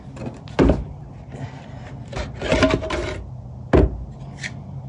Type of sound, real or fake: real